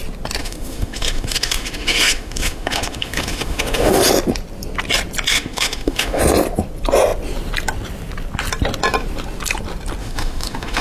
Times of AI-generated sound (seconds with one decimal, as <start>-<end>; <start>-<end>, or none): 0.4-4.0; 5.3-6.2; 10.0-10.8

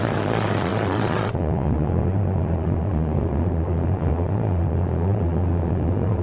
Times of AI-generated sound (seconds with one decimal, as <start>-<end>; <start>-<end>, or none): 0.0-6.2